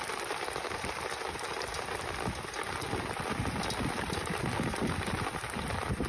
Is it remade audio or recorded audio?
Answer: recorded